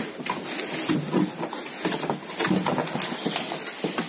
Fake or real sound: real